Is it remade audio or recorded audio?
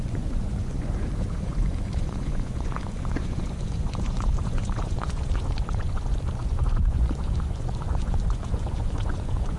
remade